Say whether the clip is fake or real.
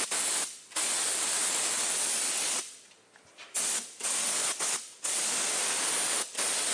real